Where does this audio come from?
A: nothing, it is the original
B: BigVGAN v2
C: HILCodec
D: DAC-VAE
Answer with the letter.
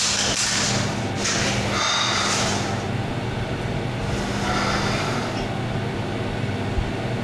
A